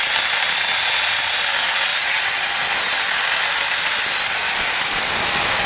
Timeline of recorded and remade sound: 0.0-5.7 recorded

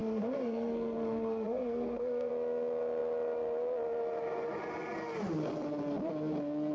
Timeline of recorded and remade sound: 0.0-2.3 remade; 2.3-6.7 recorded

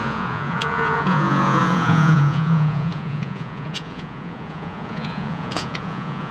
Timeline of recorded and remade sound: 0.0-6.3 remade

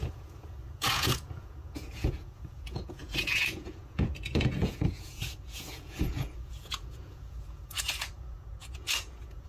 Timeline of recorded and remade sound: 0.0-9.5 remade